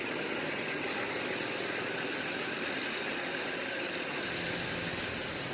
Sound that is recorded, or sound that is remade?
recorded